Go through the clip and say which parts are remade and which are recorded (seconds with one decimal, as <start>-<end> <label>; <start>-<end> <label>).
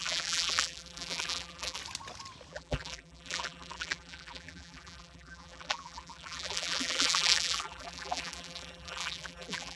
0.0-1.8 remade; 1.8-2.5 recorded; 2.5-9.8 remade